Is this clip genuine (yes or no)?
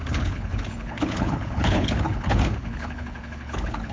no